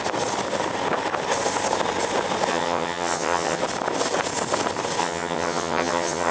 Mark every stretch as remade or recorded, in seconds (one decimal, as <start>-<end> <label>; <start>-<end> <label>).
0.0-2.5 recorded; 2.5-3.6 remade; 3.6-5.0 recorded; 5.0-6.3 remade